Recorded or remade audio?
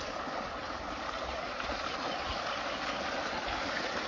recorded